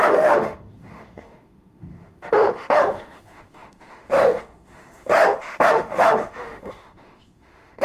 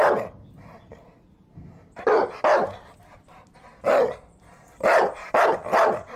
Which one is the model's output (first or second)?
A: first